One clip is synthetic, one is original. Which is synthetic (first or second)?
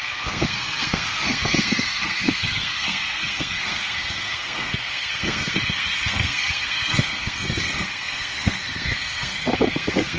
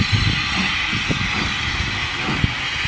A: first